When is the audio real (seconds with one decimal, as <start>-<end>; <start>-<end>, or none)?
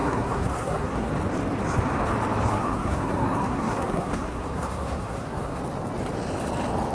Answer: 1.1-2.5; 5.6-6.9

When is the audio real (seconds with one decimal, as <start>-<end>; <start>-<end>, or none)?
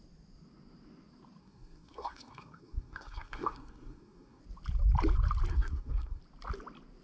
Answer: 0.0-1.4; 4.4-5.5; 6.2-7.0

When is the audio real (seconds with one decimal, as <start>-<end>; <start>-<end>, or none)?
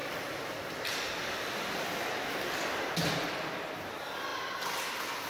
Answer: 1.4-4.3; 4.8-5.3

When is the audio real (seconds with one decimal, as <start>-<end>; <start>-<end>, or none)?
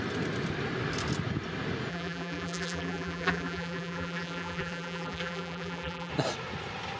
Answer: 0.0-1.9; 6.1-7.0